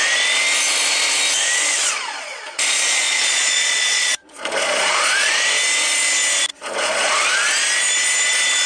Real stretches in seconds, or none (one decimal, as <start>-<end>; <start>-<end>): 0.0-1.8; 5.3-6.5; 7.1-8.7